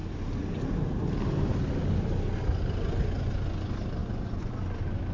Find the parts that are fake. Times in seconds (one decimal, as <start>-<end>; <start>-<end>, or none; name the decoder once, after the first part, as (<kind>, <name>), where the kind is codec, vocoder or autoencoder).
4.0-4.5 (vocoder, Vocos)